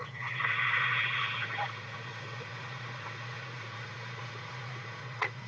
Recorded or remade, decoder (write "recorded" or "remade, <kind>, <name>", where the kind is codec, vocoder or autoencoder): remade, vocoder, Vocos